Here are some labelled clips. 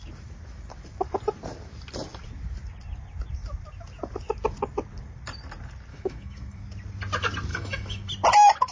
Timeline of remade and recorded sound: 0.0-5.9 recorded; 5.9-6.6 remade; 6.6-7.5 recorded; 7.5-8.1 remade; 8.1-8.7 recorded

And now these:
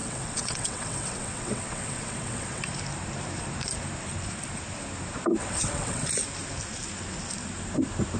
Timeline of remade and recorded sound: 0.0-2.6 remade; 2.6-5.4 recorded; 5.4-6.1 remade; 6.1-8.2 recorded